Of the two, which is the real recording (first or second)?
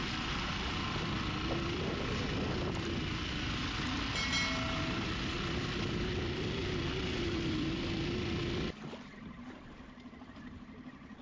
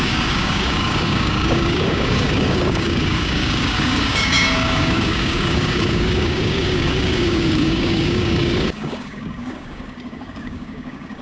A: first